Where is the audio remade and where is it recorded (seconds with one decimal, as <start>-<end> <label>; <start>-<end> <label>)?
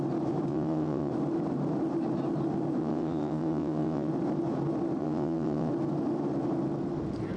0.0-0.5 recorded; 0.5-1.1 remade; 1.1-2.8 recorded; 2.8-4.1 remade; 4.1-5.0 recorded; 5.0-5.7 remade; 5.7-7.4 recorded